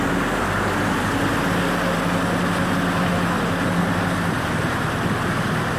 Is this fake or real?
real